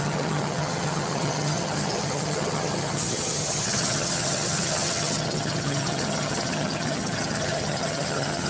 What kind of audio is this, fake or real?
fake